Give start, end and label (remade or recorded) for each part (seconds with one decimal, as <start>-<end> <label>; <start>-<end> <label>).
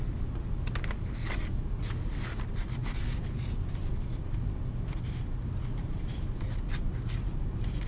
0.0-7.9 recorded